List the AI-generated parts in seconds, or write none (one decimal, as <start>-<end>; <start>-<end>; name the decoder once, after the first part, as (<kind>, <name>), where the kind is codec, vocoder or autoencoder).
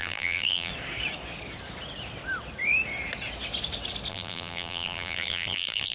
0.0-0.7 (vocoder, BigVGAN v2); 4.1-5.9